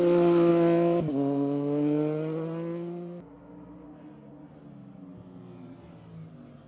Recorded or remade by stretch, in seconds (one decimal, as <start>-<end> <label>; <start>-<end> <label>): 0.0-6.7 recorded

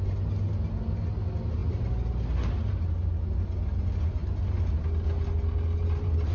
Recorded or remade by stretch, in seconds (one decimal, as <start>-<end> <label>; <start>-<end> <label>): 0.0-6.3 recorded

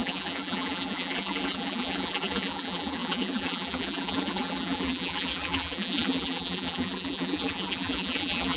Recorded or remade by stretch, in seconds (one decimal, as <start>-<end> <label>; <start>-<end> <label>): 0.0-8.6 remade

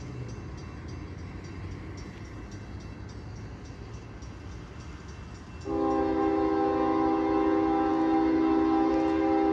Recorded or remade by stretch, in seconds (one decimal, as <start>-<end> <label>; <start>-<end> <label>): 0.0-9.5 recorded